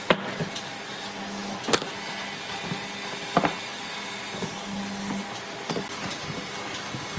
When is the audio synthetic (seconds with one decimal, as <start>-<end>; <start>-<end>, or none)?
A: none